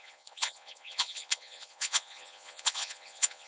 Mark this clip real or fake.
fake